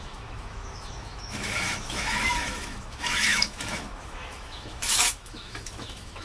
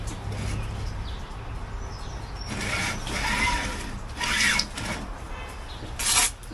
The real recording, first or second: second